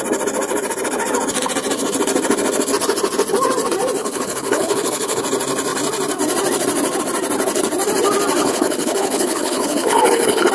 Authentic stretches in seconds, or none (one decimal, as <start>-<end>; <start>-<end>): 0.0-4.0; 5.2-8.4